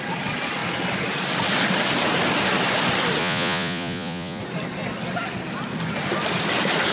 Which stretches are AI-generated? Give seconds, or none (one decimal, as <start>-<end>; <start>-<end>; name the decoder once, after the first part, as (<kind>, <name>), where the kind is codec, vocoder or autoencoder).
3.2-4.4 (vocoder, Vocos)